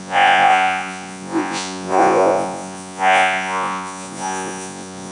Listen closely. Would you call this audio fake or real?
fake